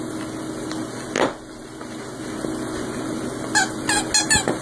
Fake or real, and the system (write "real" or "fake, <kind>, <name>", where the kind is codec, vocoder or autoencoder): real